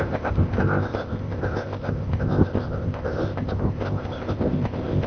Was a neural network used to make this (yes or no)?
yes